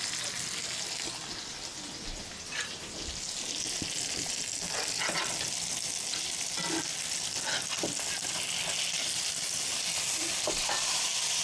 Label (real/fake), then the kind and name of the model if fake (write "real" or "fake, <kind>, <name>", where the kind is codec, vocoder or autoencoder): real